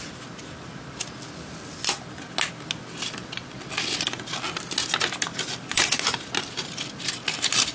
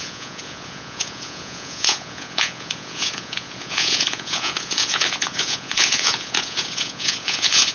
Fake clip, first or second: second